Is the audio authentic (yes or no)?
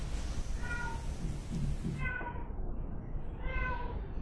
yes